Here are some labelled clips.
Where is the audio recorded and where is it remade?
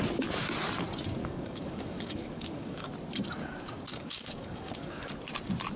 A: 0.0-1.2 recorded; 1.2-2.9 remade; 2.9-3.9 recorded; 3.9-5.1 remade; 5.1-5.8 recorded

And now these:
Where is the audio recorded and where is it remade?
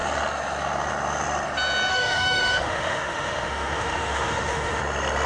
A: 0.0-1.9 recorded; 1.9-4.8 remade; 4.8-5.3 recorded